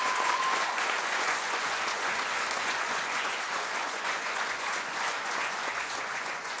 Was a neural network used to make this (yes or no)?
yes